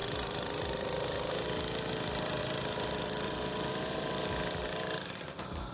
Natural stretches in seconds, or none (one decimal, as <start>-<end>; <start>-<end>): 1.3-2.4